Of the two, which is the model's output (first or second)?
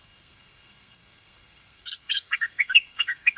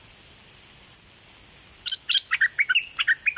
first